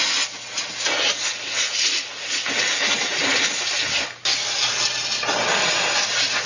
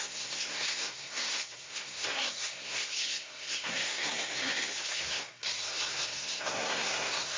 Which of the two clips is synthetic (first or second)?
second